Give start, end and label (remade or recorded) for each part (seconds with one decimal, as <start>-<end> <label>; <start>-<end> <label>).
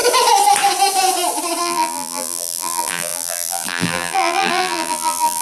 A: 0.0-1.6 recorded; 1.6-5.4 remade